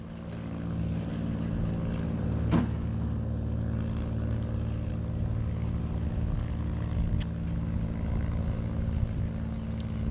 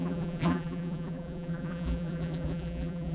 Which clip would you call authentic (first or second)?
first